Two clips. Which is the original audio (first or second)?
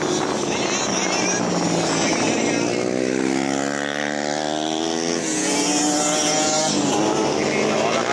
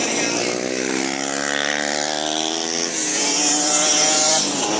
first